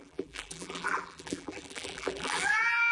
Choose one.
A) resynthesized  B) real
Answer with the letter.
A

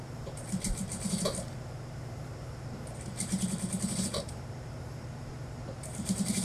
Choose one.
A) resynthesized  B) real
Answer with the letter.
A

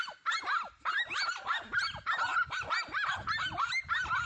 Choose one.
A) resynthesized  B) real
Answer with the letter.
B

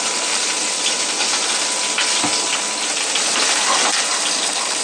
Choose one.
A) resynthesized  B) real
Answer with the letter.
B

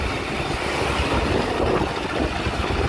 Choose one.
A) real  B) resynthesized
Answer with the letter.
A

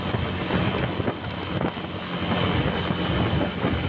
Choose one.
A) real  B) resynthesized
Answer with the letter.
A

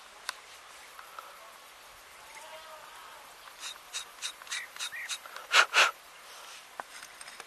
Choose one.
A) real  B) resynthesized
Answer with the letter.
A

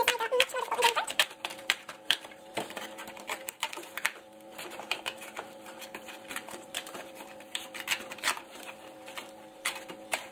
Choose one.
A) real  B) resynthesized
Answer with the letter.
B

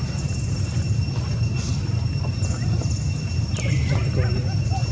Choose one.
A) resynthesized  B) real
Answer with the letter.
A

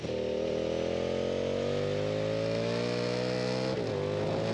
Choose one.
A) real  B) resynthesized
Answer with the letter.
A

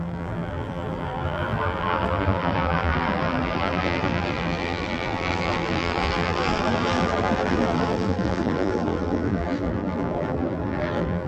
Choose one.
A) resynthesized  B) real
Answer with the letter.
A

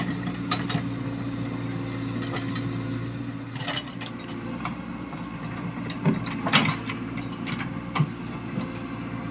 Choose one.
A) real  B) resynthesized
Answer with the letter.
A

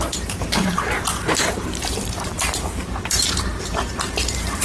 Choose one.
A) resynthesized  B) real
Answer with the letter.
A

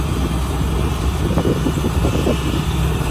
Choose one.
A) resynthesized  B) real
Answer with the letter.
A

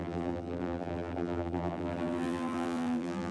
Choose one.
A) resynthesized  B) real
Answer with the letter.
A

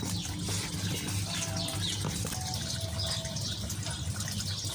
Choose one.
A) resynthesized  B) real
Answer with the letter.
B